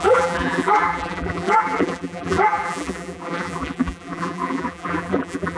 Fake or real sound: fake